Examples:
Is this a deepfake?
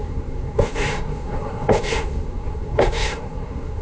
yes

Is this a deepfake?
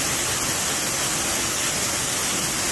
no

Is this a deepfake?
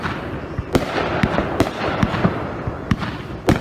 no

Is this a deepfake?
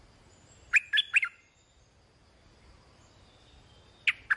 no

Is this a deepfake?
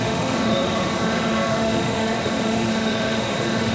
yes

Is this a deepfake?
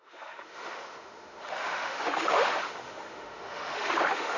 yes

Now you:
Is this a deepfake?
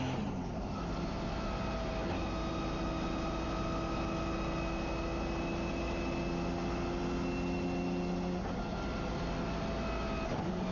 no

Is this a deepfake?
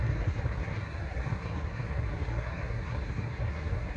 yes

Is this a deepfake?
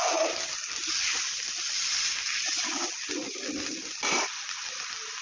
yes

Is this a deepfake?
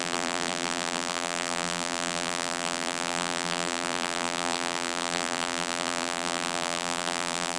yes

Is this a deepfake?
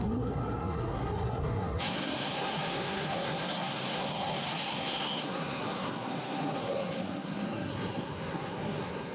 yes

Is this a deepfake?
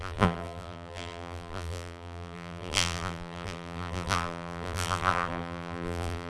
yes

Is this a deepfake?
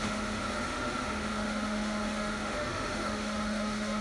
yes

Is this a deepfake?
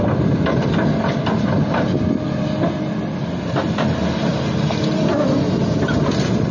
no